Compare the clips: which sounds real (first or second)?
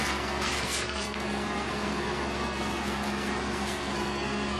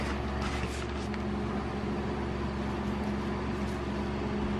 second